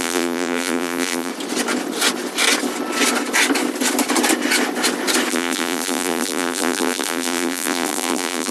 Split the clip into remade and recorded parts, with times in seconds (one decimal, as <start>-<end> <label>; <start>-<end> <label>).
0.0-1.3 remade; 1.3-5.3 recorded; 5.3-8.5 remade